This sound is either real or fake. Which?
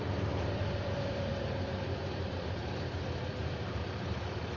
fake